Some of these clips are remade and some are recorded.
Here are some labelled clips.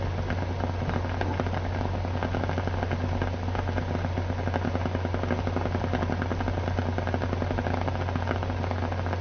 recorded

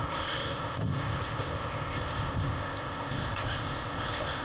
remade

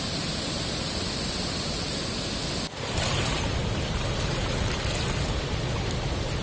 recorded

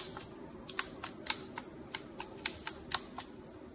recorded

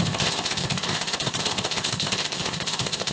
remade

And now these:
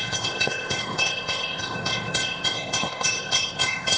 remade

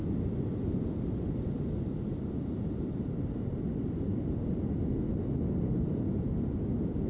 recorded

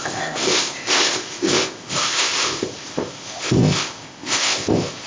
remade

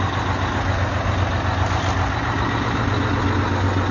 recorded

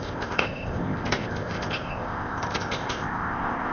remade